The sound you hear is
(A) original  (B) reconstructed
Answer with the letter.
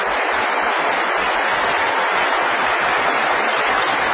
A